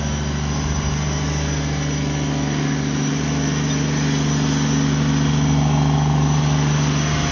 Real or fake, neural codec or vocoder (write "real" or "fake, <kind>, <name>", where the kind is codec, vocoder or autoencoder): real